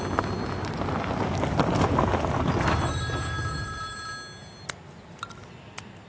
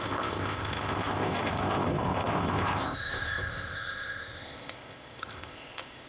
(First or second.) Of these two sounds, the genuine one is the first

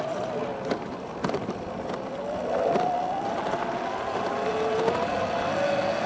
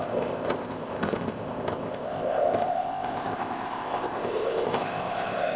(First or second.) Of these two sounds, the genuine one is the first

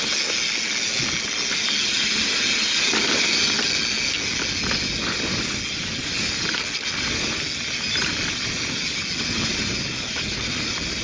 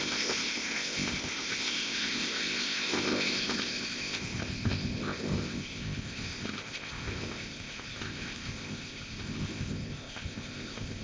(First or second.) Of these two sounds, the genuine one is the first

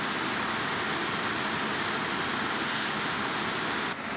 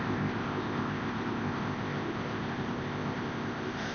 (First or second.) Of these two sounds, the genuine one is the first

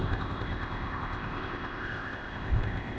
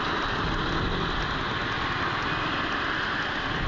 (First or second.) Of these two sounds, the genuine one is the second